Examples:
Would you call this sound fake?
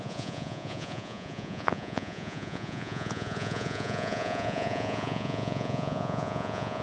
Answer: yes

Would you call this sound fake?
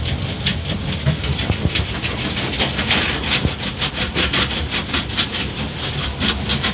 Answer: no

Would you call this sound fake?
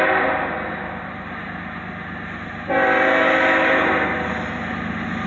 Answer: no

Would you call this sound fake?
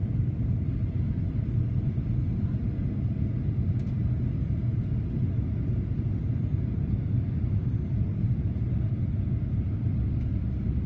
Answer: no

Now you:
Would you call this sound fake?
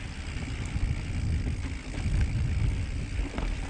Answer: no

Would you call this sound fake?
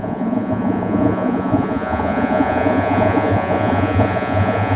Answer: yes